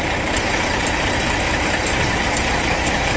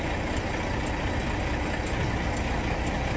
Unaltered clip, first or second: second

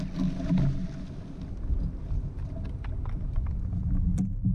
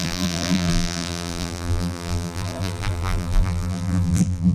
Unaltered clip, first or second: first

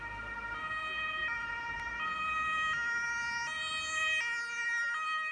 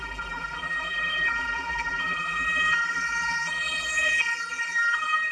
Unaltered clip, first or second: first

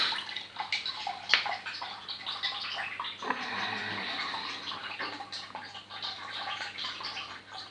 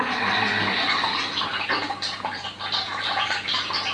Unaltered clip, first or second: second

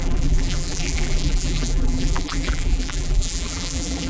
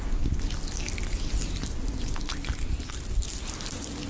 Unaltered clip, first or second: second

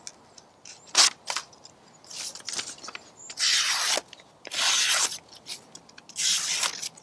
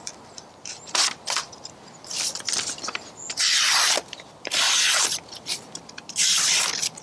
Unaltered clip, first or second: first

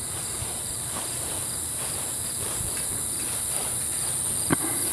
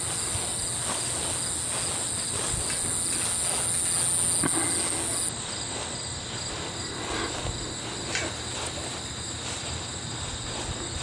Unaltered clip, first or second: second